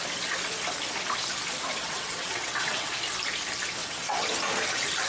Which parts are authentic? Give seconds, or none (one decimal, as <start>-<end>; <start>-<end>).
0.0-1.8; 2.9-3.8; 4.3-5.1